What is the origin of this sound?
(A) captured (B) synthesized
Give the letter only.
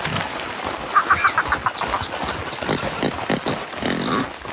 A